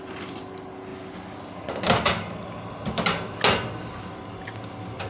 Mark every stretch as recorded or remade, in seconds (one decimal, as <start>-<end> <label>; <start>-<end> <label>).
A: 0.0-5.1 recorded